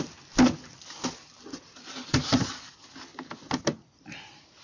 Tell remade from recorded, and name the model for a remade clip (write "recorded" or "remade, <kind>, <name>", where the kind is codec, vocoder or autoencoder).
recorded